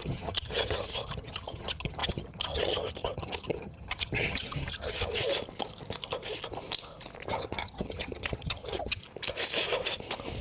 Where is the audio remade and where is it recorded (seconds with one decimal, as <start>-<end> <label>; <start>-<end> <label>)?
0.0-5.2 remade; 5.2-7.3 recorded; 7.3-9.0 remade; 9.0-10.4 recorded